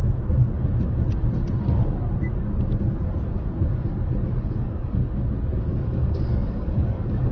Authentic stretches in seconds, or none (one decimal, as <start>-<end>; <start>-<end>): 0.0-4.4; 5.0-5.6